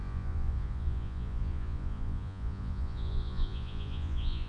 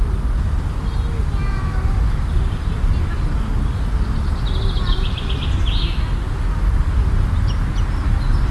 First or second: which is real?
second